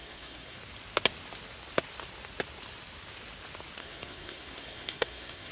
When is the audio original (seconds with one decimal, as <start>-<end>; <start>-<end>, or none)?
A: 0.6-3.8